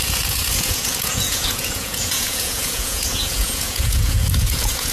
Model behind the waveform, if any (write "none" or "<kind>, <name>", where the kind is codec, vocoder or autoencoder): vocoder, Vocos